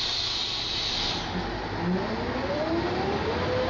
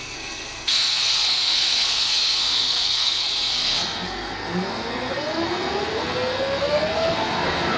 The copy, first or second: second